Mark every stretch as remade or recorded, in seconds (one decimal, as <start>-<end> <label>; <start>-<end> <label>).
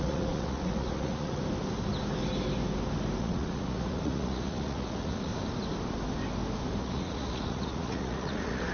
0.0-1.4 remade; 1.4-3.2 recorded; 3.2-5.3 remade; 5.3-6.8 recorded; 6.8-8.7 remade